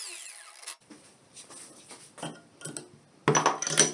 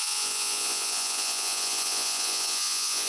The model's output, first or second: second